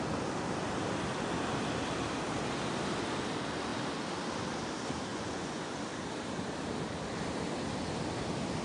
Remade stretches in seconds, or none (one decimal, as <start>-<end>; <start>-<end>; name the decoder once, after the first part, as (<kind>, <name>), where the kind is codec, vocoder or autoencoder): 5.1-5.8 (vocoder, Vocos)